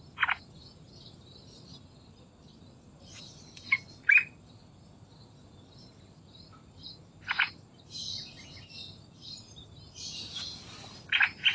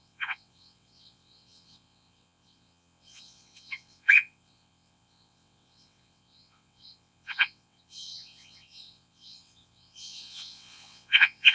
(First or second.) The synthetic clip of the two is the second